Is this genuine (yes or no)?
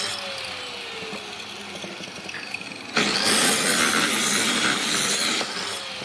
yes